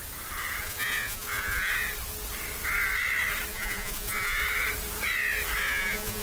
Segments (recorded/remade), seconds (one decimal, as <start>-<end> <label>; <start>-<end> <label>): 0.0-0.6 recorded; 0.6-1.7 remade; 1.7-3.5 recorded; 3.5-4.4 remade; 4.4-5.6 recorded; 5.6-6.2 remade